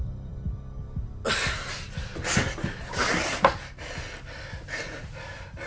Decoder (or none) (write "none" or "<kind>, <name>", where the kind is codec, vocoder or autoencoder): none